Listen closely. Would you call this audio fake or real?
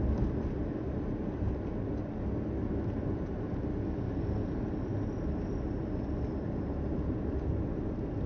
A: real